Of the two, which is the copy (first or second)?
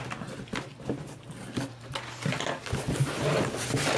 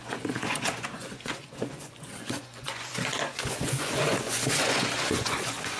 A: second